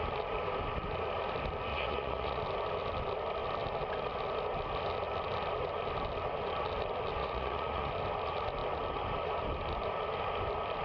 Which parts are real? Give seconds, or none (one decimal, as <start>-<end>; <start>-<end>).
0.0-1.7; 2.4-7.2; 7.9-10.8

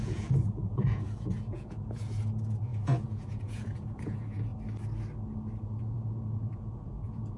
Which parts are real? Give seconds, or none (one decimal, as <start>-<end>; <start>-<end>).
4.5-5.8

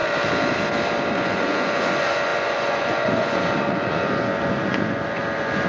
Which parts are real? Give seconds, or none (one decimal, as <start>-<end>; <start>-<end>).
0.0-1.1

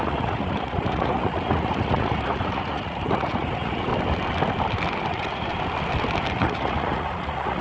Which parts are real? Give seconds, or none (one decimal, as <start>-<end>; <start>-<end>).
3.9-5.1; 5.5-6.4

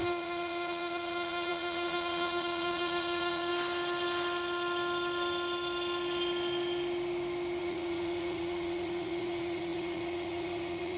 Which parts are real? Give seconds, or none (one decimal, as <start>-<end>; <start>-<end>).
3.5-7.6